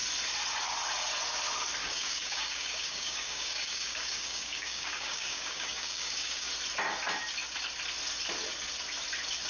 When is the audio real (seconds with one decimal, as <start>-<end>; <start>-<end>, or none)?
0.0-1.8; 6.5-9.5

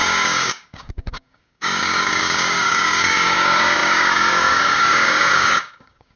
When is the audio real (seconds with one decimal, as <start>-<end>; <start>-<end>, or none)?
none

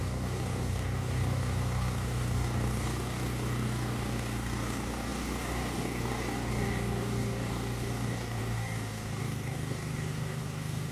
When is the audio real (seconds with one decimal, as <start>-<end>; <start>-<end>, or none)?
none